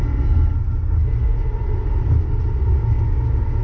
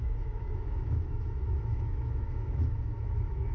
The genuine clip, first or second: first